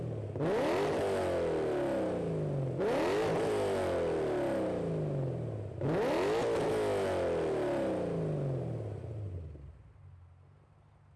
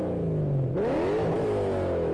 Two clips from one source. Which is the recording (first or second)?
first